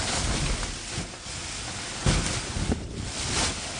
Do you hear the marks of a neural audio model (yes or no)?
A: no